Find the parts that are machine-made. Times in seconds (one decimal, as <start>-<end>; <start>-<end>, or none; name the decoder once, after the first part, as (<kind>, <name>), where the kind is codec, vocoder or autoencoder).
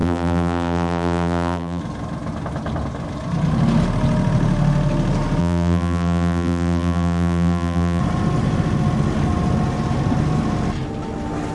0.0-1.8 (vocoder, BigVGAN v2); 5.4-8.0